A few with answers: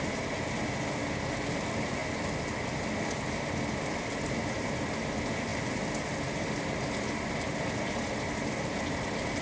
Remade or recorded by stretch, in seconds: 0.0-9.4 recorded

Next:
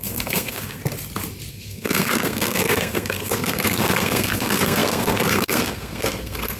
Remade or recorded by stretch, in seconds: 0.0-0.8 remade; 0.8-1.5 recorded; 1.5-6.6 remade

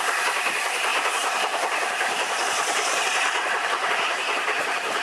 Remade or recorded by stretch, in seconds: 0.0-5.0 remade

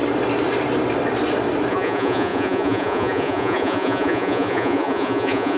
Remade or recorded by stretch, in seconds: 0.0-1.7 recorded; 1.7-5.6 remade

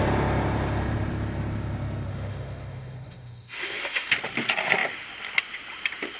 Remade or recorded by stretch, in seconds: 0.0-2.1 recorded; 2.1-4.1 remade; 4.1-6.2 recorded

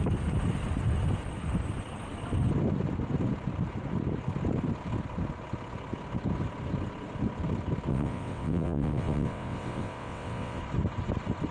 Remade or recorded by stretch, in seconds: 0.0-7.9 recorded; 7.9-10.6 remade; 10.6-11.5 recorded

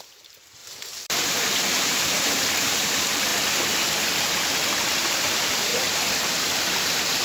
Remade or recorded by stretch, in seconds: 0.0-3.3 remade; 3.3-5.1 recorded; 5.1-7.2 remade